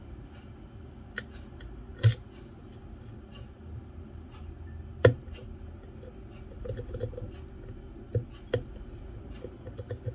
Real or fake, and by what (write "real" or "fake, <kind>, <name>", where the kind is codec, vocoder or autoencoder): real